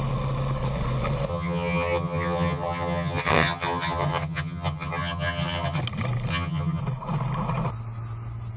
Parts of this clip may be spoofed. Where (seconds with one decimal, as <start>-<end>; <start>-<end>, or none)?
1.3-5.8; 6.3-6.8